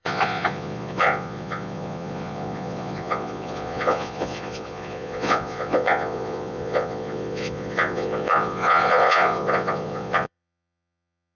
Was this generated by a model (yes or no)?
yes